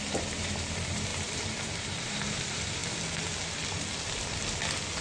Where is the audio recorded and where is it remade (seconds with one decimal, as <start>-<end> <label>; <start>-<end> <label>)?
0.0-2.8 remade; 2.8-5.0 recorded

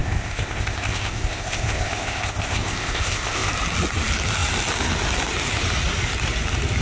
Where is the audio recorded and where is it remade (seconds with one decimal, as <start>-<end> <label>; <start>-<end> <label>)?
0.0-3.5 remade; 3.5-6.8 recorded

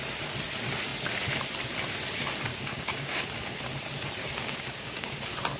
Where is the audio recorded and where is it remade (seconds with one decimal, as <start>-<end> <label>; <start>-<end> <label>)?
0.0-2.5 recorded; 2.5-3.2 remade; 3.2-4.2 recorded; 4.2-5.1 remade; 5.1-5.6 recorded

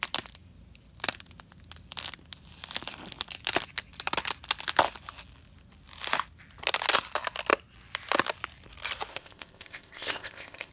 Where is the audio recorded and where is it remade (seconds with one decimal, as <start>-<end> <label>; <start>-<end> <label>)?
0.0-9.1 recorded; 9.1-10.7 remade

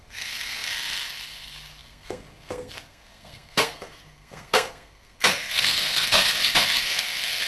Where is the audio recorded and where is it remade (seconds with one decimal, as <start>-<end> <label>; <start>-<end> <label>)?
0.0-7.5 remade